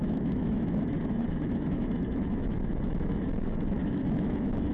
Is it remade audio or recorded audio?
remade